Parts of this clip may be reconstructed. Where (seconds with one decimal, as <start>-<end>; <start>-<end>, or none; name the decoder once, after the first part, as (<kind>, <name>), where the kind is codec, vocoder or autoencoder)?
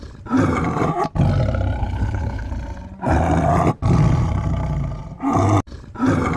1.8-2.5 (codec, HILCodec)